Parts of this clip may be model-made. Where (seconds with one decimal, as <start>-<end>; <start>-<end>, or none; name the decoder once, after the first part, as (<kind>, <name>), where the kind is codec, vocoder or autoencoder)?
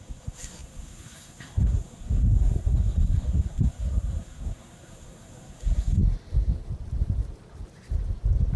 0.0-6.0 (codec, SNAC)